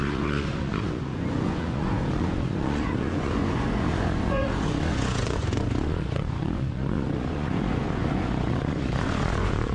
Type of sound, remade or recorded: remade